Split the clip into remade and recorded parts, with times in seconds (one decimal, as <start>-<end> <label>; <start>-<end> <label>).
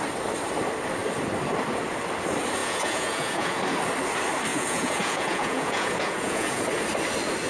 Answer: 0.0-2.6 recorded; 2.6-3.6 remade; 3.6-4.5 recorded; 4.5-6.6 remade; 6.6-7.5 recorded